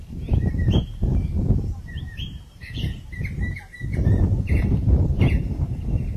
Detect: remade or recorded remade